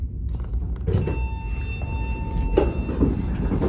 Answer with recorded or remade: recorded